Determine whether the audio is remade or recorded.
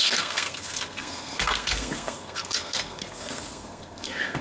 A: remade